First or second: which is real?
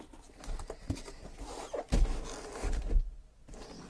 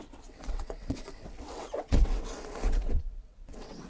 first